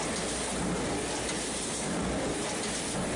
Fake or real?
real